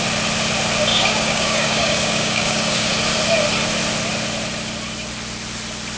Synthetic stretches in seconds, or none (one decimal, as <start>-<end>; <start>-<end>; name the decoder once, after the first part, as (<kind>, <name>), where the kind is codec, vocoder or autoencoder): 0.9-2.9 (codec, DAC)